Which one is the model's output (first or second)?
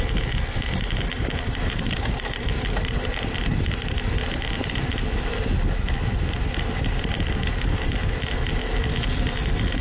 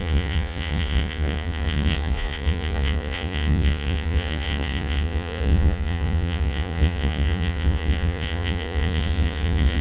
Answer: second